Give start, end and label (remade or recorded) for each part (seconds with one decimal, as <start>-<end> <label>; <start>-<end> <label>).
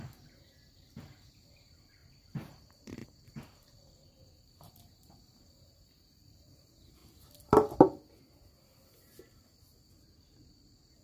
0.0-7.0 remade; 7.0-9.9 recorded; 9.9-11.0 remade